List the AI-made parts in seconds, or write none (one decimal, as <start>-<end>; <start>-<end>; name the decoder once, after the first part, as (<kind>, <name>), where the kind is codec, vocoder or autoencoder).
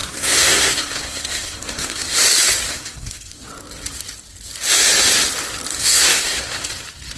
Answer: 0.0-2.2 (codec, SNAC); 2.7-3.5; 5.8-6.7